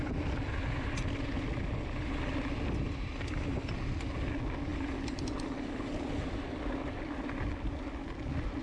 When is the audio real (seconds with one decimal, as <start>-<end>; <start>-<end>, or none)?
0.0-8.6